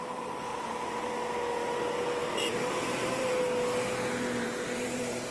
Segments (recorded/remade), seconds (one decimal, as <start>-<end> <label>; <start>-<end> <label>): 0.0-0.5 recorded; 0.5-1.1 remade; 1.1-2.2 recorded; 2.2-3.4 remade; 3.4-4.4 recorded; 4.4-5.3 remade